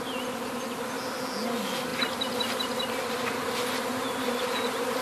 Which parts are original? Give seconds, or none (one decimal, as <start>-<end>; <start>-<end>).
0.0-5.0